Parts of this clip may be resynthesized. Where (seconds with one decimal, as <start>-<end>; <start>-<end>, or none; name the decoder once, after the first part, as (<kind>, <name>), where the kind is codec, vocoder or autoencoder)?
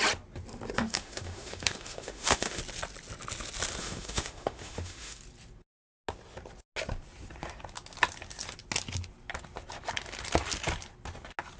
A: 0.8-2.6 (autoencoder, DAC-VAE); 3.8-5.2